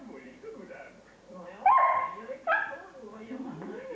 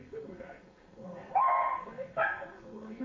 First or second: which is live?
first